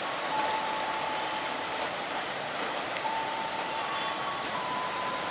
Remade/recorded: remade